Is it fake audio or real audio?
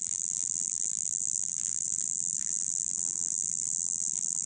fake